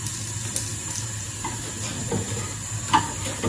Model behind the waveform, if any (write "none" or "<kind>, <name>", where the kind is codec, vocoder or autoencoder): none